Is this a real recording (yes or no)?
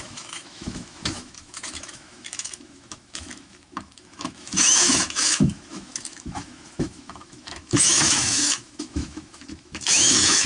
no